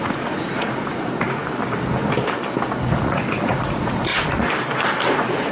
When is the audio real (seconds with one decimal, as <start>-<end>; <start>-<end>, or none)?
1.4-2.9; 4.1-5.1